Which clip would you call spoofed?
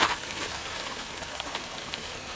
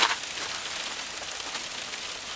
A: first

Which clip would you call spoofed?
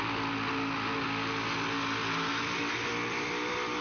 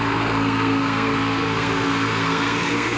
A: second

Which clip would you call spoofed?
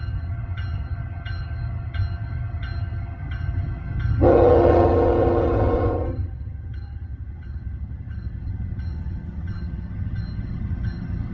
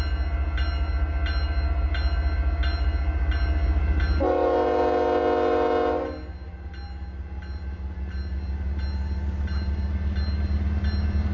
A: first